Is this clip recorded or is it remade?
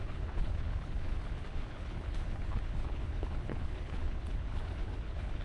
remade